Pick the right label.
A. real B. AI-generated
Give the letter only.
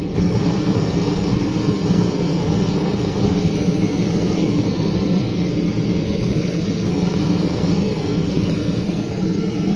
B